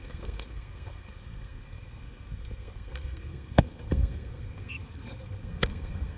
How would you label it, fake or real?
fake